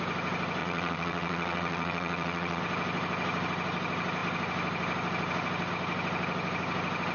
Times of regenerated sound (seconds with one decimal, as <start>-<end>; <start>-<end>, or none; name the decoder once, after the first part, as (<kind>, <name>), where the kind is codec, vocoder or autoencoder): 0.6-2.6 (vocoder, WaveNeXt)

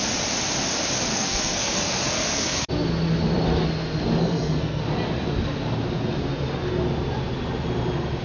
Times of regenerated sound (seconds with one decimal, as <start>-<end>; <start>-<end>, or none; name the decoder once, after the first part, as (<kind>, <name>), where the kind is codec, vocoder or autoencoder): 1.1-2.7 (codec, SNAC); 4.2-4.8

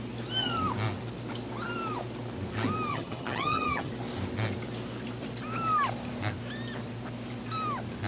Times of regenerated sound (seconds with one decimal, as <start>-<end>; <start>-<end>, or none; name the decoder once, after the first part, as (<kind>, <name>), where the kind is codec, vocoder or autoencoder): 2.9-3.9 (vocoder, HiFi-GAN)

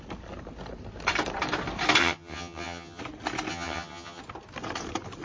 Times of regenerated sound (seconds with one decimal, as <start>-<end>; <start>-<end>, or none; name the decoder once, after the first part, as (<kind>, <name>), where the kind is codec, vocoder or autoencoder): 2.0-3.0 (vocoder, HiFi-GAN); 3.5-4.2